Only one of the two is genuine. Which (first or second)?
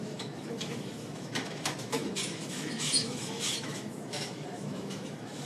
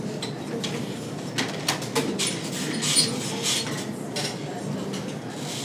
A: second